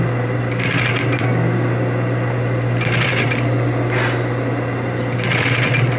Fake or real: real